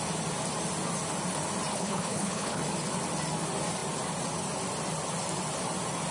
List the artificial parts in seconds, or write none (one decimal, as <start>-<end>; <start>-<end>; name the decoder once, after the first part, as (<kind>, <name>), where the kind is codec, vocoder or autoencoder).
1.7-2.6 (codec, HILCodec)